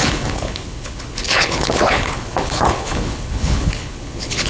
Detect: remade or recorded remade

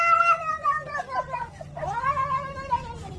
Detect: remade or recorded recorded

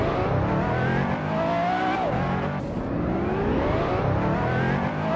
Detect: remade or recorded recorded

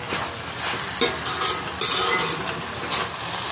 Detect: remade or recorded recorded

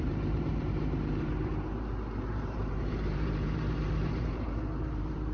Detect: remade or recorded remade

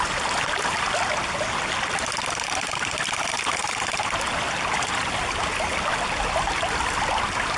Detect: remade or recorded recorded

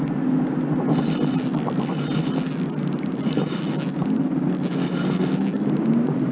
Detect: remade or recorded recorded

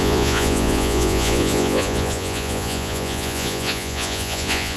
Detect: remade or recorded remade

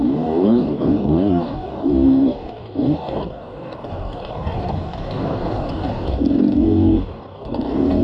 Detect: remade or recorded remade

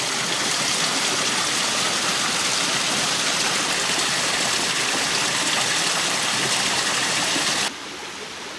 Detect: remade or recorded recorded